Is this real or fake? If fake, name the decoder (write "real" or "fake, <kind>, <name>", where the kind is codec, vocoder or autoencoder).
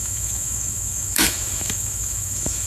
fake, autoencoder, DAC-VAE